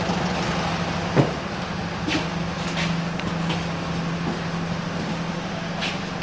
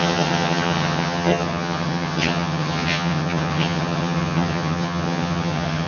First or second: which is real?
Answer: first